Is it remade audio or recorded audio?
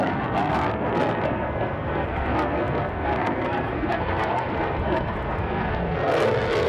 remade